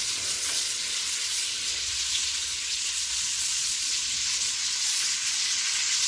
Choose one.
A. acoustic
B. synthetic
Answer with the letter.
B